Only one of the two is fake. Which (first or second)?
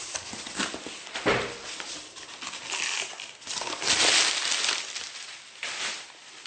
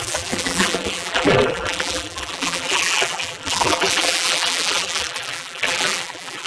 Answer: second